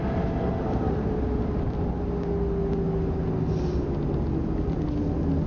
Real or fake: real